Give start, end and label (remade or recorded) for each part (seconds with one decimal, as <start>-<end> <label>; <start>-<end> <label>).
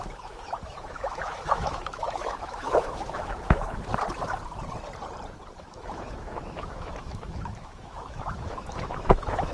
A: 0.0-3.9 remade; 3.9-5.6 recorded; 5.6-9.5 remade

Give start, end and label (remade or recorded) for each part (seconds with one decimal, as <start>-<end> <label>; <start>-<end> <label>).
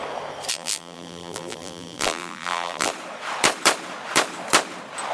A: 0.0-0.5 recorded; 0.5-2.9 remade; 2.9-5.1 recorded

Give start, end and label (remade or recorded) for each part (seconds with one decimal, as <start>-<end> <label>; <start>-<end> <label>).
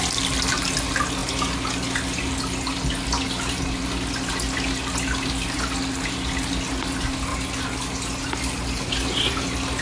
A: 0.0-9.8 recorded